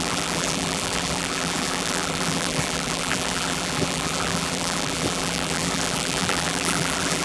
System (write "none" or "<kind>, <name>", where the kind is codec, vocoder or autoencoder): vocoder, BigVGAN v2